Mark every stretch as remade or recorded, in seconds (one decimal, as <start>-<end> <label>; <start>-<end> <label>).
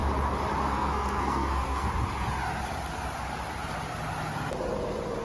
0.0-0.6 recorded; 0.6-1.9 remade; 1.9-5.2 recorded